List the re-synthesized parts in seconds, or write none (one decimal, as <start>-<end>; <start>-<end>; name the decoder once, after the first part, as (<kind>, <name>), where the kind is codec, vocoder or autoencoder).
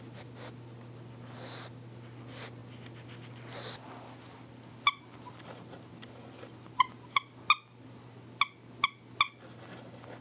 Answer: none